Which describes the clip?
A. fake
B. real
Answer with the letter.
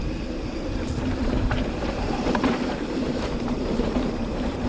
A